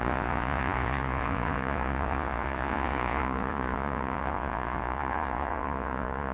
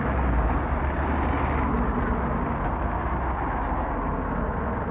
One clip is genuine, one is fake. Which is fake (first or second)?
first